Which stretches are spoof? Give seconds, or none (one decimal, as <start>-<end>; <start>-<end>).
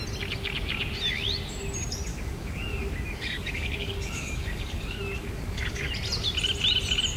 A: 2.1-5.9